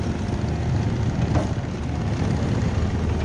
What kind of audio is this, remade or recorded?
recorded